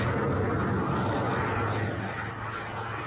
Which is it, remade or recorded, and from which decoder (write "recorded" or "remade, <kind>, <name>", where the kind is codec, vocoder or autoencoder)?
recorded